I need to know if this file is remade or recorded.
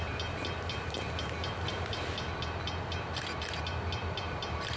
recorded